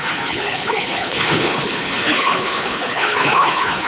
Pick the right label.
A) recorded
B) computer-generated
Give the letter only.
B